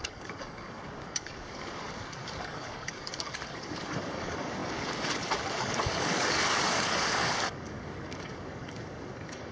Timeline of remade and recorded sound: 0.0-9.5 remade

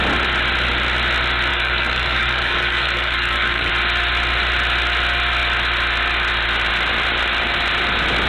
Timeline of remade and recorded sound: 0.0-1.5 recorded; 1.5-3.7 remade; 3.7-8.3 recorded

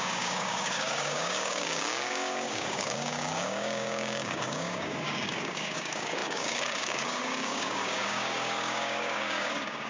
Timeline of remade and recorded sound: 0.0-9.9 remade

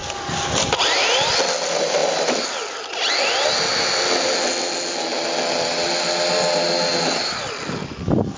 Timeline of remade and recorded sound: 0.0-8.4 recorded

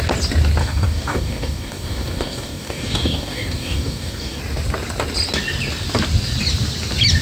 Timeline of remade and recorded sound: 0.0-0.6 recorded; 0.6-4.4 remade; 4.4-7.2 recorded

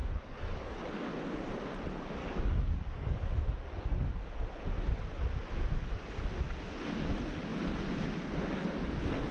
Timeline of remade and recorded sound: 0.0-0.8 remade; 0.8-2.2 recorded; 2.2-4.1 remade; 4.1-9.3 recorded